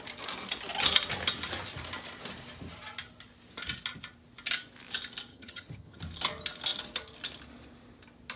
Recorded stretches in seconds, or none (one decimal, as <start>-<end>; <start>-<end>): 0.0-5.3; 6.0-8.4